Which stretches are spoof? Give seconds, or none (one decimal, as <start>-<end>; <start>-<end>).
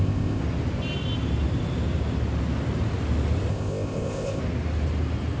0.0-0.4; 3.5-4.4